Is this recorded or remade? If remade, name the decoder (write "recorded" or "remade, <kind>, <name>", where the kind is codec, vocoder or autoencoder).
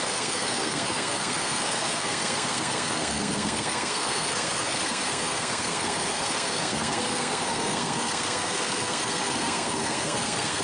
remade, codec, SNAC